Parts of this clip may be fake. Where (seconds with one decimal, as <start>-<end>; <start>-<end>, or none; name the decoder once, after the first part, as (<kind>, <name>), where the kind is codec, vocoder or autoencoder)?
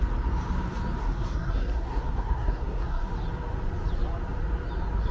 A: 1.0-3.1 (codec, SNAC)